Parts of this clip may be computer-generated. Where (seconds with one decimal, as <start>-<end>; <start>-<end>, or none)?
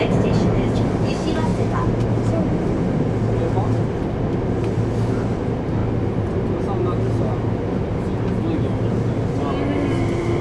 none